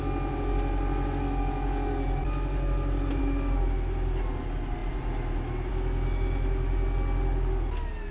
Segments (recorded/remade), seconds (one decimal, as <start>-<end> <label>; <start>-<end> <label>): 0.0-8.1 recorded